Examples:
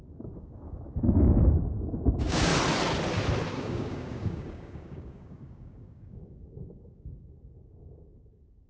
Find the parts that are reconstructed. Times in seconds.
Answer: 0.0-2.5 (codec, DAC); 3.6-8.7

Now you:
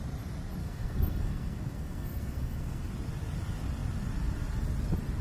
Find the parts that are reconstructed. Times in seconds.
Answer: 0.6-2.9 (codec, SNAC)

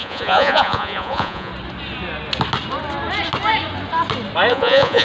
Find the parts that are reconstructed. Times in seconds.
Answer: 0.0-1.5 (vocoder, Vocos); 4.5-5.0